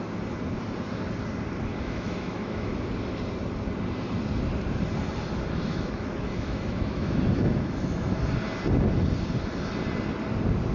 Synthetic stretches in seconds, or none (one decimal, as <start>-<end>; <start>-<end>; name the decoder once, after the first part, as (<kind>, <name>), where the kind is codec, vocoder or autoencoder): 1.7-2.9 (autoencoder, DAC-VAE); 5.7-8.2